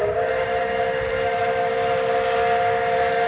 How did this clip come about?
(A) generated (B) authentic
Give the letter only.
B